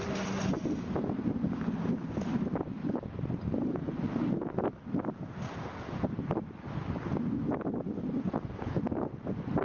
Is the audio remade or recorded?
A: recorded